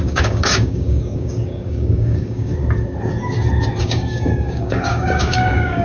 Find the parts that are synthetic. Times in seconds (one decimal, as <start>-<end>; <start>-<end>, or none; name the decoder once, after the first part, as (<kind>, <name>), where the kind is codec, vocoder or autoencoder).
0.0-2.5 (codec, DAC); 3.8-5.8